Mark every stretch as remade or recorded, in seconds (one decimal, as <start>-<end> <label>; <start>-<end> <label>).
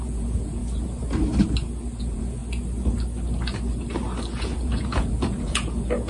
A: 0.0-0.6 remade; 0.6-2.0 recorded; 2.0-2.4 remade; 2.4-4.3 recorded; 4.3-6.1 remade